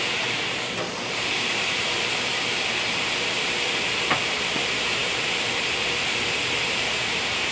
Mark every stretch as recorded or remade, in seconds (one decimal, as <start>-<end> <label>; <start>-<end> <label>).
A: 0.0-2.3 remade; 2.3-3.0 recorded; 3.0-7.5 remade